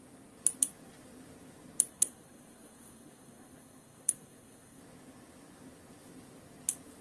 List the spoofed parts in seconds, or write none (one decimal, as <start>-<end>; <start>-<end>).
1.9-4.8